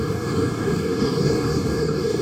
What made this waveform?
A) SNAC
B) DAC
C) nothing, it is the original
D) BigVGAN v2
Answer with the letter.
B